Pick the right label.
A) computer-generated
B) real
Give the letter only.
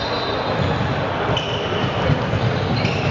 B